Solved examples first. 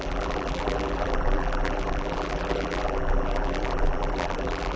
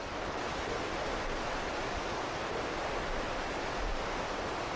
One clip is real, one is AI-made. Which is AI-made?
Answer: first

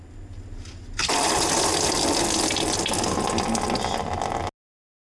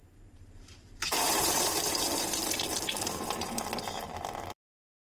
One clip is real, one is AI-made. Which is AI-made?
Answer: second